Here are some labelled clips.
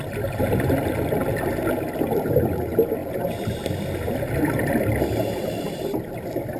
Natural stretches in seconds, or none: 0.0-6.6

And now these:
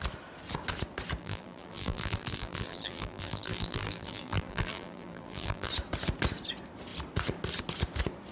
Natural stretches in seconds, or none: 0.0-1.2; 5.7-8.3

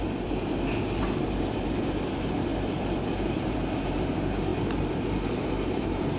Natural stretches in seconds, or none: none

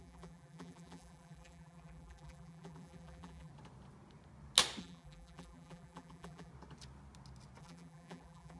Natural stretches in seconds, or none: 3.5-4.8; 6.5-7.6

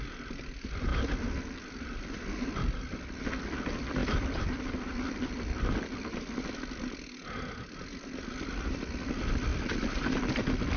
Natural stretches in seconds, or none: 0.0-0.9; 3.3-4.0; 6.2-9.5; 10.0-10.8

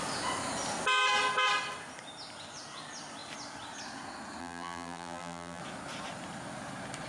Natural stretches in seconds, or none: 0.0-4.4; 5.6-7.1

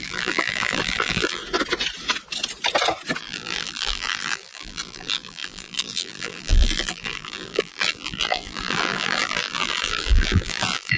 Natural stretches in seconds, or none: 1.4-3.2

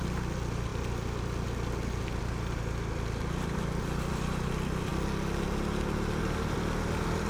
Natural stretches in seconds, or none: 0.7-2.2; 4.9-6.2